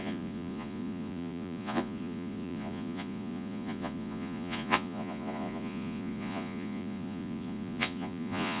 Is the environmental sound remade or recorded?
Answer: remade